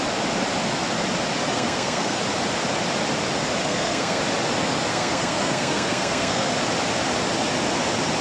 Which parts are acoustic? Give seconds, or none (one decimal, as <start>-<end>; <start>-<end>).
0.0-1.5; 2.2-3.6; 4.2-4.9; 6.5-8.2